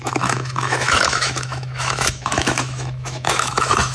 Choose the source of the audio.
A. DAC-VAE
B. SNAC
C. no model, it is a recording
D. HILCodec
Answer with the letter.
A